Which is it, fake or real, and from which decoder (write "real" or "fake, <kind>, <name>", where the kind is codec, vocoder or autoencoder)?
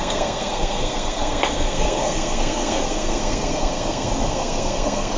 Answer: fake, codec, SNAC